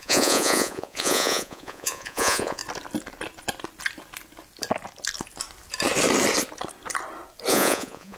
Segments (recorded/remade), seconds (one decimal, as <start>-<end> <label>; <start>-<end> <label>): 0.0-2.6 remade; 2.6-7.5 recorded; 7.5-8.2 remade